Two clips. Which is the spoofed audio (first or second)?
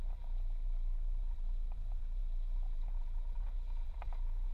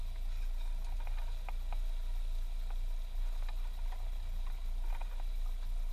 first